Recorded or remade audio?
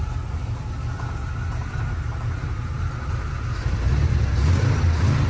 recorded